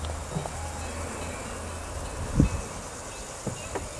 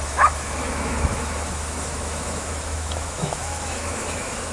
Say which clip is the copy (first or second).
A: second